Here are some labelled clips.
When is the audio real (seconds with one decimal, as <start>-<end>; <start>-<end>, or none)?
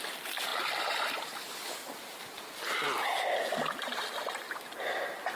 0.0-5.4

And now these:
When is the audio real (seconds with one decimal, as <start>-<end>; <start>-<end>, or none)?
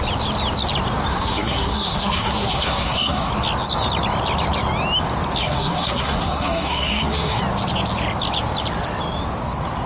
0.0-1.1; 3.3-5.4; 7.4-9.9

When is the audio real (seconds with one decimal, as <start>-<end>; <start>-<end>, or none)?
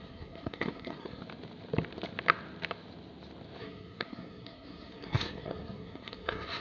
1.2-3.6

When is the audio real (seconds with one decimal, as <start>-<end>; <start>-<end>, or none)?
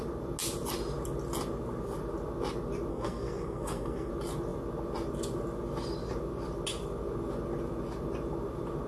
0.0-2.9; 4.1-8.9